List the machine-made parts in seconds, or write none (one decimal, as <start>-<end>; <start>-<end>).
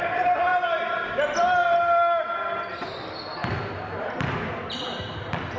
none